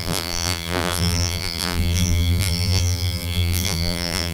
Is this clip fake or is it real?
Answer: fake